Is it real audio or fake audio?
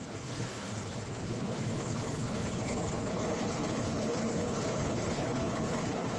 fake